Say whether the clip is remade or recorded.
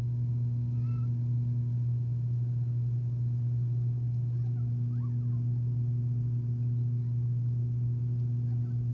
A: recorded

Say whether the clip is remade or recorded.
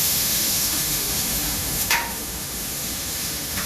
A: remade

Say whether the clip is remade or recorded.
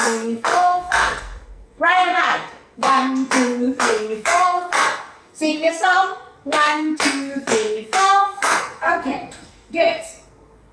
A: remade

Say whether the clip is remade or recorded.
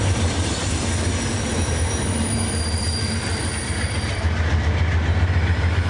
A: remade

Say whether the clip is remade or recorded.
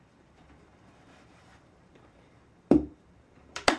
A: remade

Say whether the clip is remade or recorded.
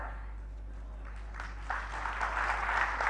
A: recorded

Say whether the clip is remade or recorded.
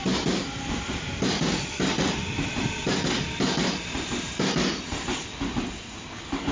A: recorded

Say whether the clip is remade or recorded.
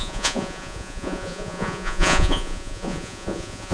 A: remade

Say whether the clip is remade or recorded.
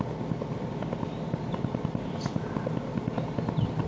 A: recorded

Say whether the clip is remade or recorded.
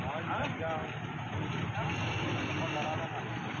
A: recorded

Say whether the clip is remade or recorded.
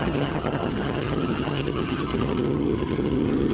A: remade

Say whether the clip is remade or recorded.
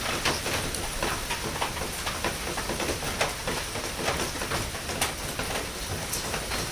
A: recorded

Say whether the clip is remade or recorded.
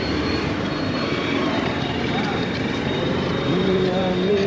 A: remade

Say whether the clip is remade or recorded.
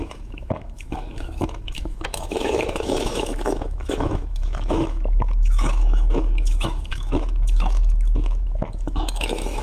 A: remade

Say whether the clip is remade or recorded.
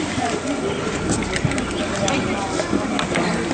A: recorded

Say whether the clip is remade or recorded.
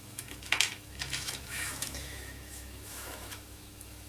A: remade